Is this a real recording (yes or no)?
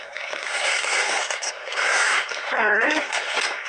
no